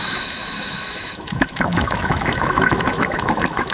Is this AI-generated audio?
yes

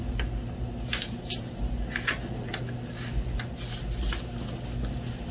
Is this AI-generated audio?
no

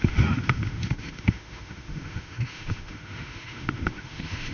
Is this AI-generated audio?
yes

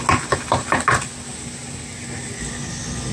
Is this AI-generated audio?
no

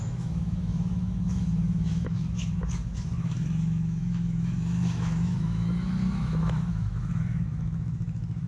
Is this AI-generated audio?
yes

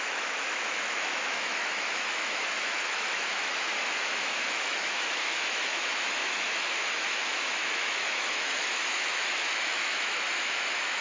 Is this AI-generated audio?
yes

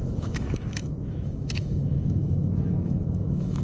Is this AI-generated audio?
yes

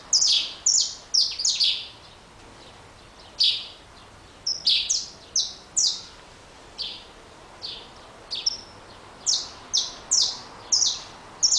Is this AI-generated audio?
no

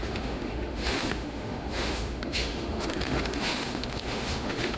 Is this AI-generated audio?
yes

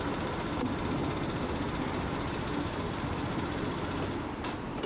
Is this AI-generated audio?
no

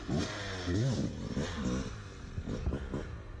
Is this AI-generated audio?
no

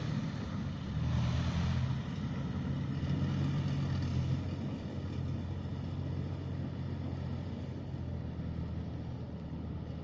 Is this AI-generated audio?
no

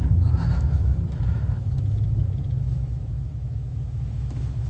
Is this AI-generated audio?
yes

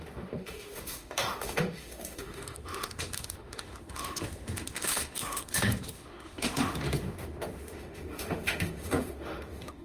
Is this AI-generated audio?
yes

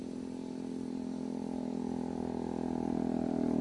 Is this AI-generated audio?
no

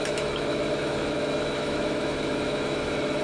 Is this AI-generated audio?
yes